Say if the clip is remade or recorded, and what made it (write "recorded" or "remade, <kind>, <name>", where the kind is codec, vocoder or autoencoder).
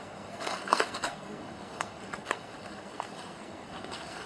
remade, codec, SNAC